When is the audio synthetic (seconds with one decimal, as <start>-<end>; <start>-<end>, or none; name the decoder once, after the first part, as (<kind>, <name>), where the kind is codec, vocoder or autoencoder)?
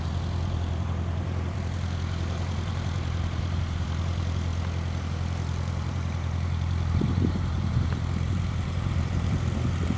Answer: 0.0-4.5 (vocoder, BigVGAN v2); 5.0-10.0